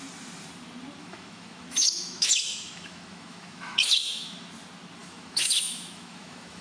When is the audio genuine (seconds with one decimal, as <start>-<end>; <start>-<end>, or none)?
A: 0.0-1.0; 4.5-5.0